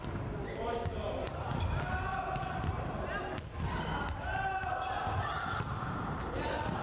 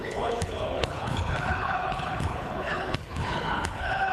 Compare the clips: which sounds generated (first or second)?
second